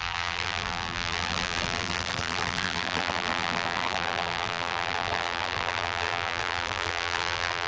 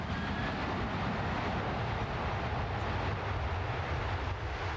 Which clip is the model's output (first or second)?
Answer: first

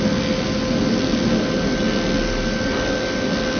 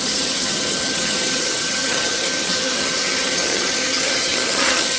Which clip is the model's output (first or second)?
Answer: second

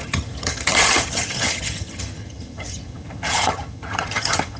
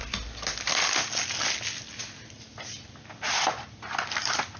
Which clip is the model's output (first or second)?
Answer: first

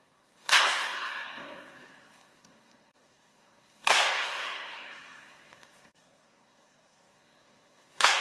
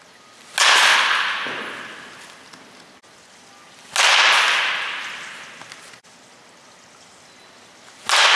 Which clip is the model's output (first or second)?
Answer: first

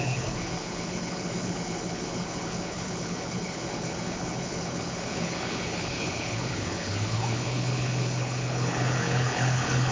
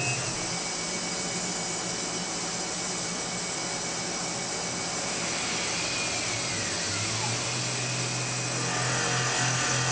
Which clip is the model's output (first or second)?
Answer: first